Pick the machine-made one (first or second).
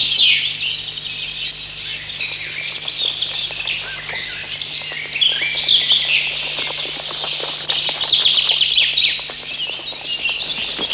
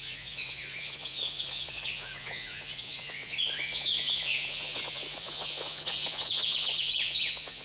second